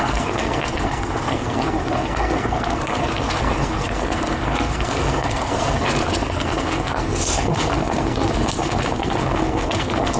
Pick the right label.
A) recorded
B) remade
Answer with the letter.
B